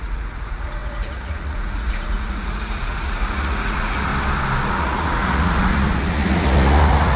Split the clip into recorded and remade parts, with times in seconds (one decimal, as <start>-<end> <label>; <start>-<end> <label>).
0.0-4.1 remade; 4.1-4.7 recorded; 4.7-7.2 remade